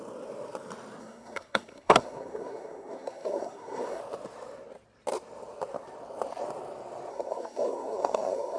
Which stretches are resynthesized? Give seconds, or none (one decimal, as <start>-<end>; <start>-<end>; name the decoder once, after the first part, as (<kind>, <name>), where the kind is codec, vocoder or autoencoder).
1.0-4.0 (codec, SNAC); 7.1-8.6